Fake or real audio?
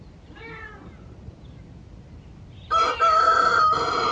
real